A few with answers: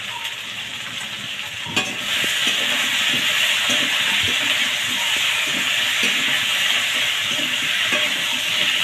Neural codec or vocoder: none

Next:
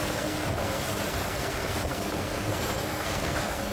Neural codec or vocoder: codec, SNAC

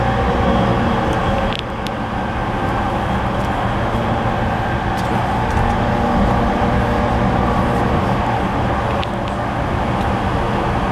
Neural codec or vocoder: none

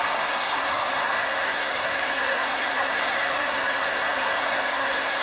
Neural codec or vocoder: codec, SNAC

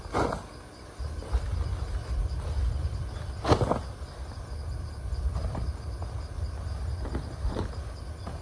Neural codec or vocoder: none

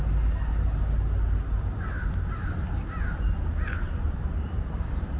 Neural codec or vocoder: none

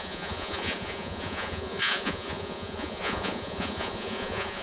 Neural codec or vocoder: vocoder, Vocos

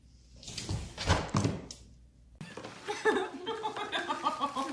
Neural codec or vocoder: none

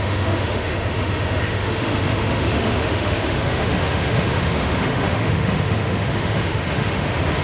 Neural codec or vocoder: autoencoder, DAC-VAE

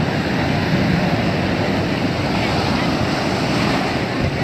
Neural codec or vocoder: none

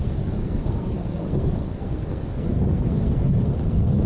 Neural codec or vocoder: codec, SNAC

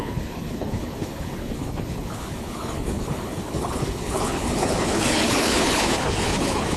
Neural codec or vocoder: codec, HILCodec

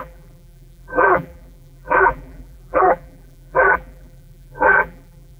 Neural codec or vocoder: vocoder, BigVGAN v2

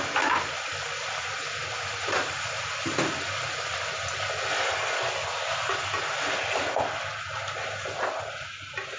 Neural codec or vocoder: none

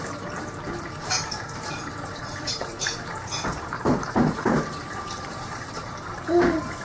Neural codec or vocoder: vocoder, BigVGAN v2